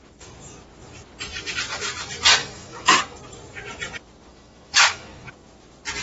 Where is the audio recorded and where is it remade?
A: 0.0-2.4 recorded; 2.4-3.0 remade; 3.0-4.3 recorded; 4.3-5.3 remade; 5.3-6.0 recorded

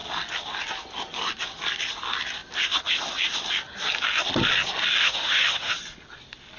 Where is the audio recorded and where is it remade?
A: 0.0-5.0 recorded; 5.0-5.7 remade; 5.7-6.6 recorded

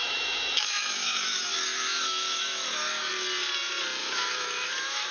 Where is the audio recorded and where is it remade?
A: 0.0-3.1 remade; 3.1-4.0 recorded; 4.0-5.1 remade

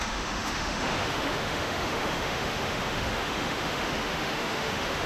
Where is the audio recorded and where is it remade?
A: 0.0-5.1 remade

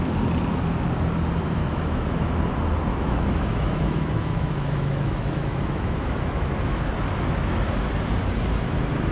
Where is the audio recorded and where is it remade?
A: 0.0-1.6 recorded; 1.6-2.3 remade; 2.3-2.9 recorded; 2.9-6.9 remade; 6.9-9.1 recorded